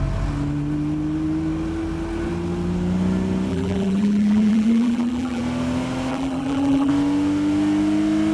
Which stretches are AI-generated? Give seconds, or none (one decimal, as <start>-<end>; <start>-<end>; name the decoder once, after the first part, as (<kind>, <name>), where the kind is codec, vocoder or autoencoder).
3.5-5.4 (vocoder, BigVGAN v2); 6.1-6.9